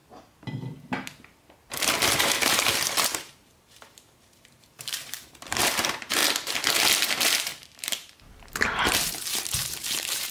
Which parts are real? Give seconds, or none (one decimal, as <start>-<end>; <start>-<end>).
0.0-1.9; 6.2-7.0